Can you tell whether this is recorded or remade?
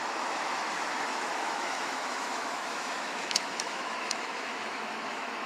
remade